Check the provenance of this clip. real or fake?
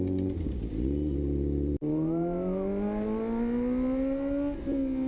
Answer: real